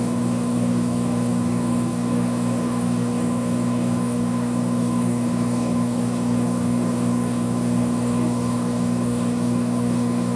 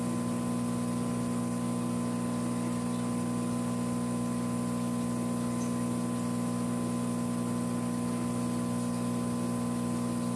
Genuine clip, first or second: second